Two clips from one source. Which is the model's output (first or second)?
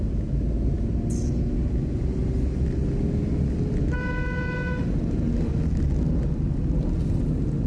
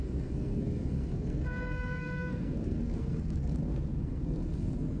second